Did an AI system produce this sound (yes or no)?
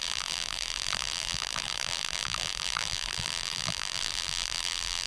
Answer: yes